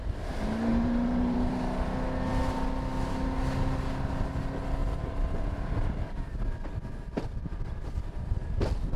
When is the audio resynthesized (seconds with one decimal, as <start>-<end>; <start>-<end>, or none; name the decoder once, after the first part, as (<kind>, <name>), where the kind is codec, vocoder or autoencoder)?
0.7-1.6 (vocoder, BigVGAN v2); 4.8-6.4